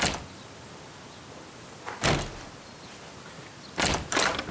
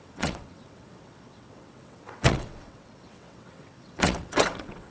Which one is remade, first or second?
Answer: second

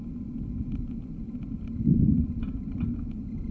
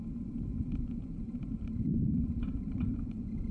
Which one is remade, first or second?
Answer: second